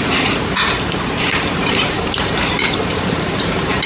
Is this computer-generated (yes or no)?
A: yes